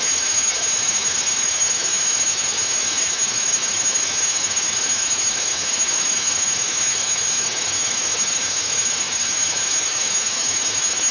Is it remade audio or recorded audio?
remade